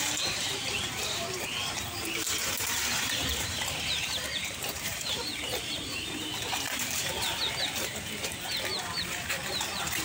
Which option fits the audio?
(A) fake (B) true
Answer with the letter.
A